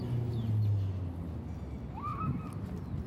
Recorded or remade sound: recorded